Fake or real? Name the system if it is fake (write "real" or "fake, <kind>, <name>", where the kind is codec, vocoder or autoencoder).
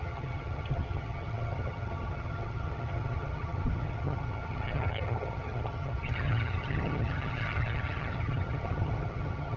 fake, vocoder, HiFi-GAN